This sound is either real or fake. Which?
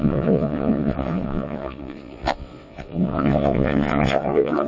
fake